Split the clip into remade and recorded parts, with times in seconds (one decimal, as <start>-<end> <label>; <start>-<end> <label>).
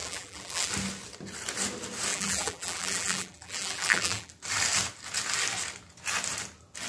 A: 0.0-0.7 remade; 0.7-2.1 recorded; 2.1-4.3 remade; 4.3-6.9 recorded